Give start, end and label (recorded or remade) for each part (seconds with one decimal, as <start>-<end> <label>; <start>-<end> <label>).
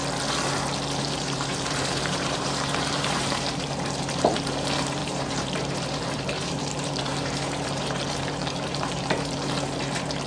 0.0-1.0 recorded; 1.0-10.3 remade